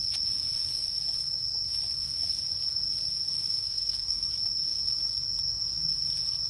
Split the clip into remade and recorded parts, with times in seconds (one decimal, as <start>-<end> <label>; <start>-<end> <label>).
0.0-3.4 recorded; 3.4-4.3 remade; 4.3-6.5 recorded